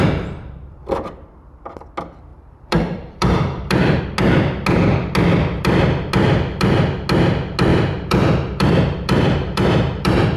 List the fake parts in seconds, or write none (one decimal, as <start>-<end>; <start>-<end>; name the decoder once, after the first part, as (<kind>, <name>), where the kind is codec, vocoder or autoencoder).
2.3-4.0 (vocoder, BigVGAN v2); 7.7-10.4